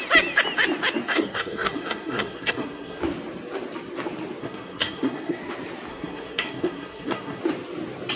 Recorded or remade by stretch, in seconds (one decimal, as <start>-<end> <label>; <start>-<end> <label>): 0.0-1.0 recorded; 1.0-3.0 remade; 3.0-4.4 recorded; 4.4-5.4 remade; 5.4-5.9 recorded; 5.9-7.4 remade; 7.4-8.2 recorded